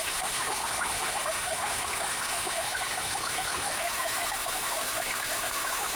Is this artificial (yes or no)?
yes